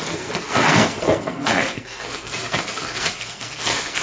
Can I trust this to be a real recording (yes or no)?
no